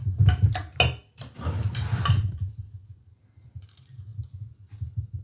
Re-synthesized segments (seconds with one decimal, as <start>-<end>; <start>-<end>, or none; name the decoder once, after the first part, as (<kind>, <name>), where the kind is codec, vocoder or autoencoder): none

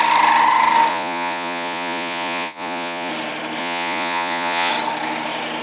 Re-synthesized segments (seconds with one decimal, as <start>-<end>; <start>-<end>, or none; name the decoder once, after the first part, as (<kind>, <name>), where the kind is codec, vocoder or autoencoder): 0.9-3.1 (vocoder, Vocos); 3.6-4.7

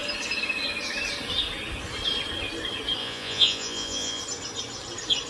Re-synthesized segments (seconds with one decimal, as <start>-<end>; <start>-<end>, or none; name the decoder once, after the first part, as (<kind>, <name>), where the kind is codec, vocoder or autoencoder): 3.0-4.2 (vocoder, Vocos)

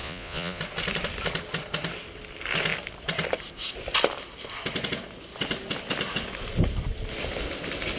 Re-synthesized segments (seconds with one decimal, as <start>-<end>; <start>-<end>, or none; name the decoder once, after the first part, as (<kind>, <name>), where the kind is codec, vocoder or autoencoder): 0.0-0.6 (vocoder, Vocos)

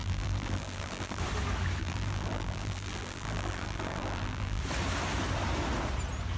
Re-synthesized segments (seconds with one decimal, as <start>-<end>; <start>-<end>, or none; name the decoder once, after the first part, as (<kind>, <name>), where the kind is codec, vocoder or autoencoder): 0.0-1.2 (vocoder, BigVGAN v2); 1.8-4.6

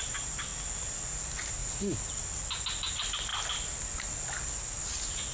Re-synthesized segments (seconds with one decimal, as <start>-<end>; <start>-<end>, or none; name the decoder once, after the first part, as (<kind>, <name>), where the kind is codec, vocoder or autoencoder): none